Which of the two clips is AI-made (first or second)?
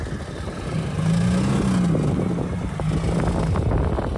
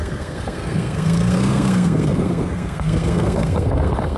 second